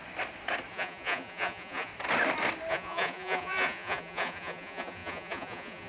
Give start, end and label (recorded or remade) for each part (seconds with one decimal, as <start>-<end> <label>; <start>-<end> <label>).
0.0-0.7 recorded; 0.7-1.9 remade; 1.9-2.7 recorded; 2.7-5.9 remade